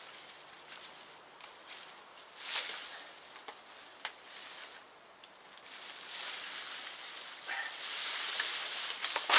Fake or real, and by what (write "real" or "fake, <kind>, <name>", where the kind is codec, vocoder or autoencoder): real